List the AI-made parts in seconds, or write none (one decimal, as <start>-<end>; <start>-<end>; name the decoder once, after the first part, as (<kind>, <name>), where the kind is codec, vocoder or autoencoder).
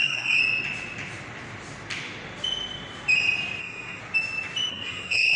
0.0-0.4 (codec, SNAC); 3.6-4.0; 4.7-5.4